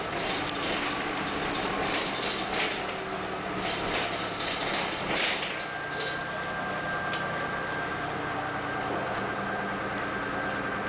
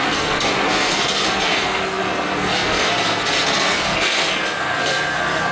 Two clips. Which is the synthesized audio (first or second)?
second